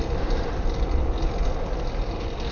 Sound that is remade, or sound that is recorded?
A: recorded